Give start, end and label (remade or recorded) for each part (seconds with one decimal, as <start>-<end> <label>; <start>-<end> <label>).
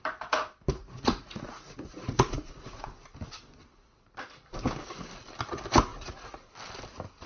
0.0-0.8 recorded; 0.8-2.9 remade; 2.9-5.9 recorded; 5.9-6.4 remade; 6.4-7.3 recorded